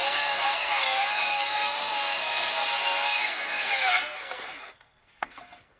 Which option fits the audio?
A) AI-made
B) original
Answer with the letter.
A